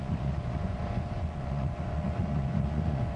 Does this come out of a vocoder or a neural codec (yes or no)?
yes